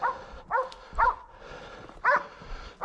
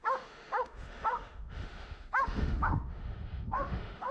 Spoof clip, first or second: second